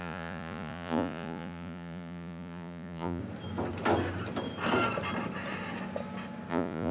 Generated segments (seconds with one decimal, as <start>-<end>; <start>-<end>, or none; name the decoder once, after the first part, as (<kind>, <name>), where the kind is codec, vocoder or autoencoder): 0.0-3.2 (vocoder, Vocos); 6.5-6.9